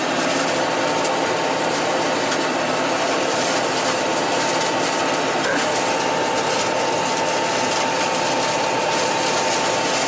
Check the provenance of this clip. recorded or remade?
recorded